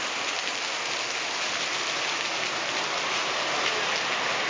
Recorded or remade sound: recorded